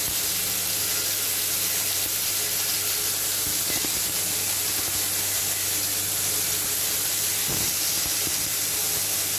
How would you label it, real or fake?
real